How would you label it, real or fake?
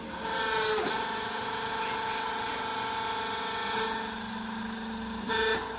real